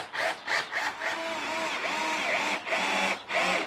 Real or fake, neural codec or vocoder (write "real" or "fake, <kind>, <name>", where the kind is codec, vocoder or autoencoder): real